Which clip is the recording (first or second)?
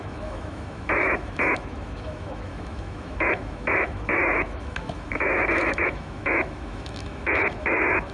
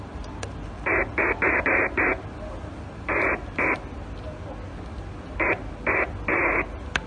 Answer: second